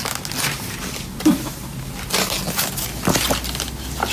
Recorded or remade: recorded